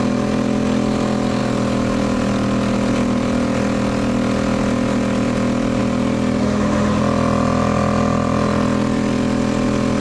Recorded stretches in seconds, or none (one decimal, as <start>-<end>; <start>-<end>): 0.0-6.4; 7.0-10.0